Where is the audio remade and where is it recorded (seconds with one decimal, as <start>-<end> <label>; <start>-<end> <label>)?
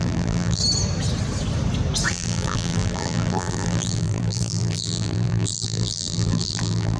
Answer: 0.0-0.6 remade; 0.6-2.1 recorded; 2.1-7.0 remade